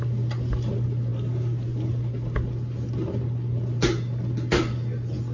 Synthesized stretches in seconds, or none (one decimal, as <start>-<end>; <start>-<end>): none